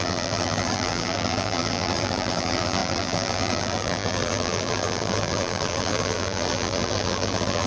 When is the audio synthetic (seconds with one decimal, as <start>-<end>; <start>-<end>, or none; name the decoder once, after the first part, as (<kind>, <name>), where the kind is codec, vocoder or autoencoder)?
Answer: 0.0-7.7 (vocoder, BigVGAN v2)